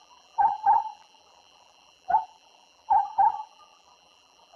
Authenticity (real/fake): fake